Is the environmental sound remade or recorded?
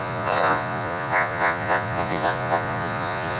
remade